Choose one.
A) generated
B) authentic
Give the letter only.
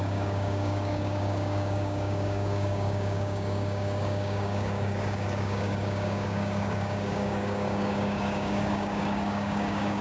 A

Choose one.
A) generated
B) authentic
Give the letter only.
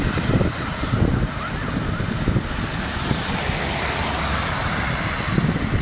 B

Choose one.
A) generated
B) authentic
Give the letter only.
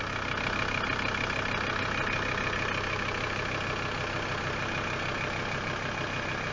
B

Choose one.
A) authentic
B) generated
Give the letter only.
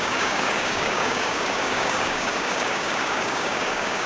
B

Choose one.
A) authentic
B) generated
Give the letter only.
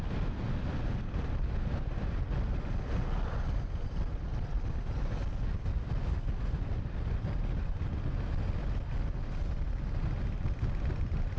A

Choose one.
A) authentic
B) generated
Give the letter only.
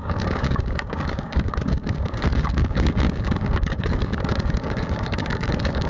B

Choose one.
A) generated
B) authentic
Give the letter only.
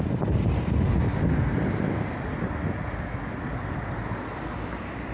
B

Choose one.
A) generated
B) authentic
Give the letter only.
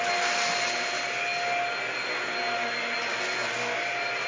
B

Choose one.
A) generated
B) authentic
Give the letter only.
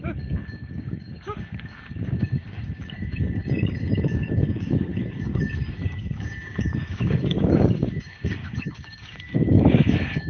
A